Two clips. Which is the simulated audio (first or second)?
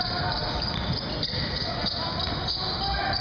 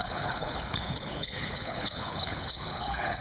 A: second